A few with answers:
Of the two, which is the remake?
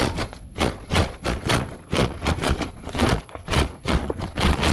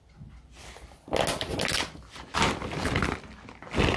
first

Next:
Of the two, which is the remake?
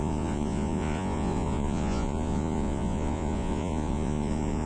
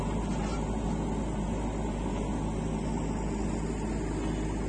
first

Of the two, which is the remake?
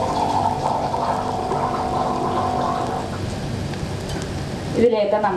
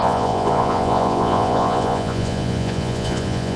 second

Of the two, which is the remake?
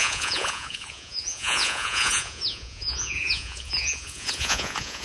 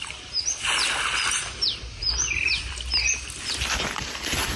first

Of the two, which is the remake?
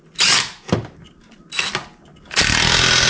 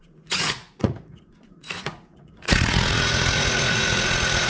second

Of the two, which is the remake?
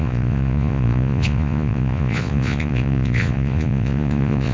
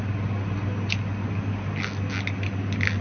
first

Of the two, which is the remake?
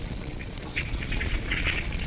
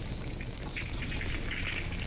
first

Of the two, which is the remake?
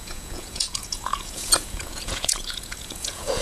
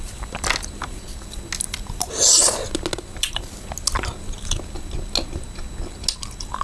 first